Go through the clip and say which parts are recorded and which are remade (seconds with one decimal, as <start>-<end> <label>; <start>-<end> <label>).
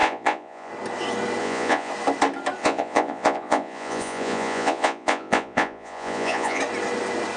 0.0-0.7 remade; 0.7-1.4 recorded; 1.4-1.9 remade; 1.9-2.6 recorded; 2.6-6.6 remade; 6.6-7.4 recorded